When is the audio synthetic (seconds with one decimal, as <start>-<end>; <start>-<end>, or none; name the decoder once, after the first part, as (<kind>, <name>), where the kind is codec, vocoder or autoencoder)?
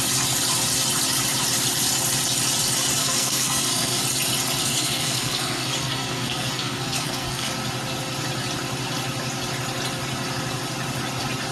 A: 3.0-4.0 (codec, SNAC); 4.6-7.5